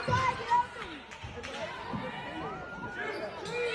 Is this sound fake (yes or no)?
no